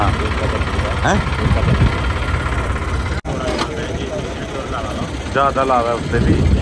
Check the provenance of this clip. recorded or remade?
recorded